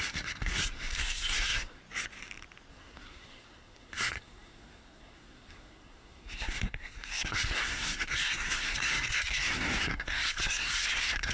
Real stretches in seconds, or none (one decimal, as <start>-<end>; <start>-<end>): 1.8-2.7